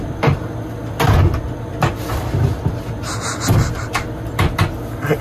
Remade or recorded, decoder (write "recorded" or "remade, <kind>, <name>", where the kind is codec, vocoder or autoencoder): recorded